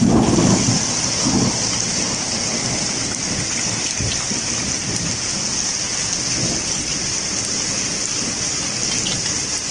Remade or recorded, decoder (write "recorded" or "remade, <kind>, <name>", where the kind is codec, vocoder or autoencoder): recorded